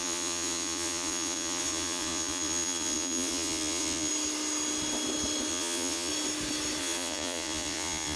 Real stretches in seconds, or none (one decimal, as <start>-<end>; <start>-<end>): 4.1-5.5; 6.1-6.8